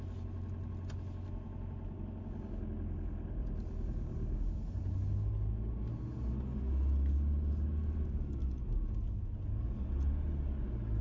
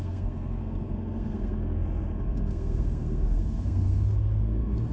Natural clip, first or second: first